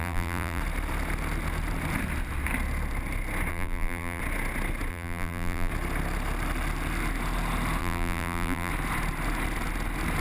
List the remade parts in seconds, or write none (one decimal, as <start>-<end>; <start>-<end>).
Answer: 0.0-0.6; 3.5-4.2; 4.9-5.7; 7.8-8.7